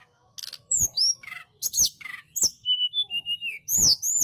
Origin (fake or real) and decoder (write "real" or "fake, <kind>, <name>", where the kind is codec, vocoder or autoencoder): fake, autoencoder, DAC-VAE